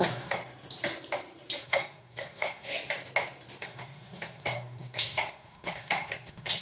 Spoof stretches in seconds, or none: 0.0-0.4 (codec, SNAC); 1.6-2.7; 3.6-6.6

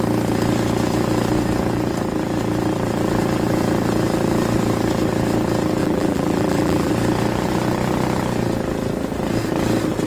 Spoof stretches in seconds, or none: 5.8-6.9 (vocoder, BigVGAN v2)

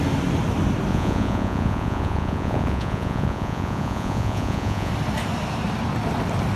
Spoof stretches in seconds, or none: 0.9-4.9 (vocoder, Vocos)